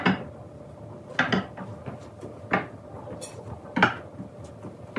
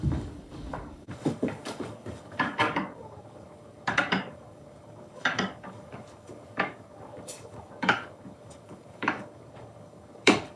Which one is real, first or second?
first